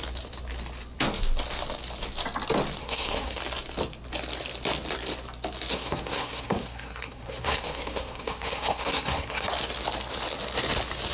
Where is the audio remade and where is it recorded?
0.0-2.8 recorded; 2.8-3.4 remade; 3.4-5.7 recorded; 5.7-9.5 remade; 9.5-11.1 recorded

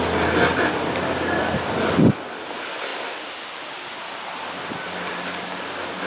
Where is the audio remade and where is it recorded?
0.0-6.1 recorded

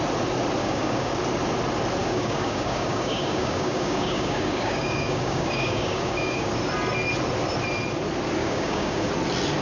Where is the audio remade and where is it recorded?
0.0-0.6 recorded; 0.6-1.1 remade; 1.1-2.0 recorded; 2.0-6.5 remade; 6.5-8.4 recorded; 8.4-9.1 remade; 9.1-9.6 recorded

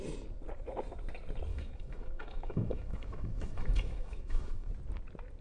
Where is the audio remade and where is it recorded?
0.0-1.5 recorded; 1.5-4.7 remade; 4.7-5.4 recorded

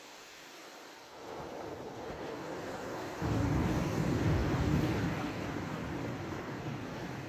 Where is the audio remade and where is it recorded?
0.0-0.5 remade; 0.5-2.2 recorded; 2.2-5.8 remade; 5.8-6.3 recorded; 6.3-7.3 remade